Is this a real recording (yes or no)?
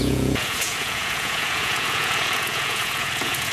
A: no